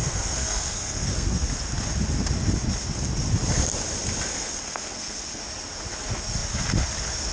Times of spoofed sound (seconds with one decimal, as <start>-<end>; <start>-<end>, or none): 0.0-1.5; 4.3-5.4